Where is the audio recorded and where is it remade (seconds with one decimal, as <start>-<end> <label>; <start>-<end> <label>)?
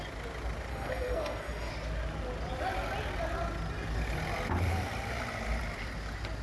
0.0-0.7 recorded; 0.7-1.7 remade; 1.7-6.4 recorded